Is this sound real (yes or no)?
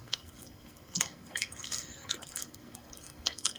no